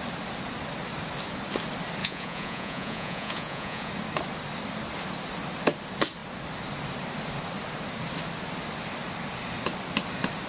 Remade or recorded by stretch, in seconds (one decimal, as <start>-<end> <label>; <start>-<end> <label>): 0.0-2.0 recorded; 2.0-3.9 remade; 3.9-10.5 recorded